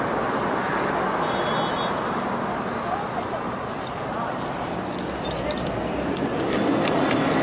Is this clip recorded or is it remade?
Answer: recorded